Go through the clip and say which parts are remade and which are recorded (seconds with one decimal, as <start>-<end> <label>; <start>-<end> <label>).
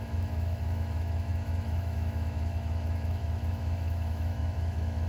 0.0-5.1 remade